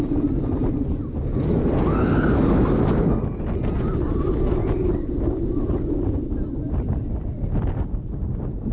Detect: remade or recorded recorded